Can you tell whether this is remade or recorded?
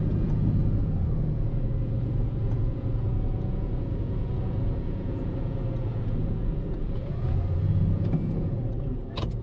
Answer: remade